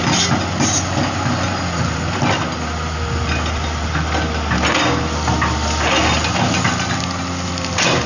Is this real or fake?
real